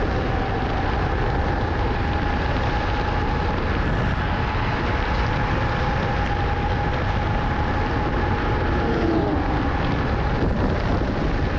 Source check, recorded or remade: recorded